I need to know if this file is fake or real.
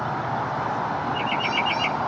real